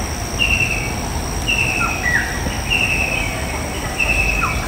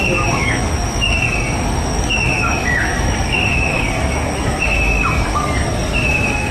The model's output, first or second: second